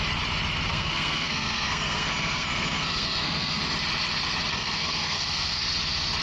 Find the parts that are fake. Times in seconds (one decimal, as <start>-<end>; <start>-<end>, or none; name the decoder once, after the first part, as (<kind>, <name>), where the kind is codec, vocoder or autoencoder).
0.7-3.6 (codec, SNAC); 4.5-5.6